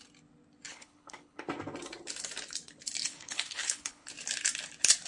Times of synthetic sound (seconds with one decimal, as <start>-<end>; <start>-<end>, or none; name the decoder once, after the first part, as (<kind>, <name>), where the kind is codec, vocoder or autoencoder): 0.7-1.5 (codec, HILCodec); 3.1-4.1